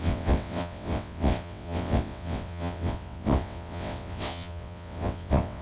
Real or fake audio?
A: fake